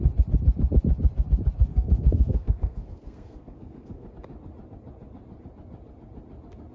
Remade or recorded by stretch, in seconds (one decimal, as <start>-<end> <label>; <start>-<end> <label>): 0.0-1.7 recorded; 1.7-4.1 remade; 4.1-6.7 recorded